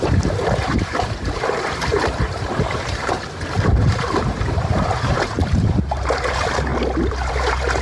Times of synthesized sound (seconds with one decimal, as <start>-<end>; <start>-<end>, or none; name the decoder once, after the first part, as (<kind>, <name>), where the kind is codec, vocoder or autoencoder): 0.0-6.7 (vocoder, BigVGAN v2); 7.3-7.8